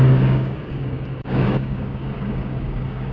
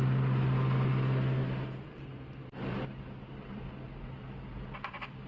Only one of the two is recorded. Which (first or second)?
second